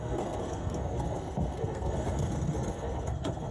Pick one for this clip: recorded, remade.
remade